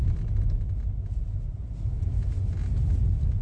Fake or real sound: real